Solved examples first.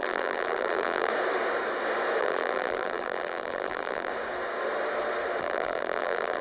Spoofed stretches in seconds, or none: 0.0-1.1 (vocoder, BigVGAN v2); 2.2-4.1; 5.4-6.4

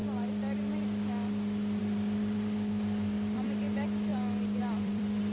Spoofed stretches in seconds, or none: 1.8-4.1 (vocoder, BigVGAN v2); 4.6-5.3

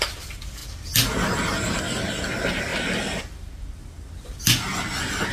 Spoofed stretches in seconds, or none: none

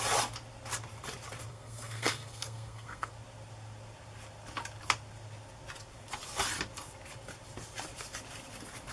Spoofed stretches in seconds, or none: 1.5-3.1 (codec, SNAC)